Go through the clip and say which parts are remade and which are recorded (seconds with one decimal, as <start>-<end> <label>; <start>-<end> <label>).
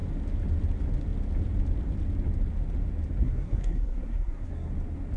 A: 0.0-3.2 recorded; 3.2-4.7 remade; 4.7-5.2 recorded